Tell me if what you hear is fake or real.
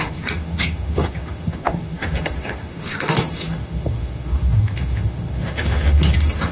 fake